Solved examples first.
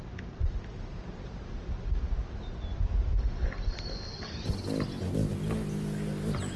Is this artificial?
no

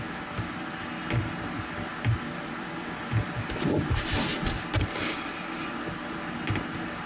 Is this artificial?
no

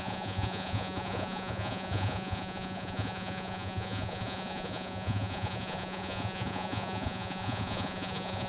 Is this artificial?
yes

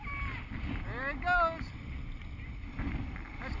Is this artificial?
no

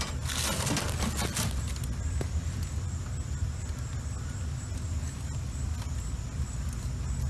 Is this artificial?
no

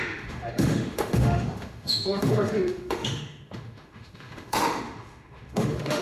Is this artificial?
yes